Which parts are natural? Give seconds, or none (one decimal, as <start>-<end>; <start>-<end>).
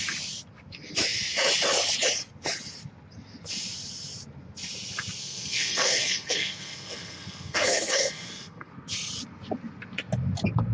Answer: 0.0-5.2; 8.7-10.7